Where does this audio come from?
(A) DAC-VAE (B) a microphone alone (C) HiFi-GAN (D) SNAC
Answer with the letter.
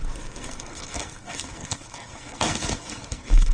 D